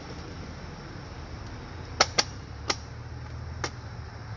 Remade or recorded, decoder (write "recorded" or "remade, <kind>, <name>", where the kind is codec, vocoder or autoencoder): recorded